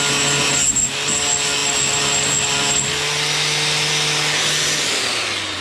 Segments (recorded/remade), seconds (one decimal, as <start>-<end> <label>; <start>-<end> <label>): 0.0-5.6 recorded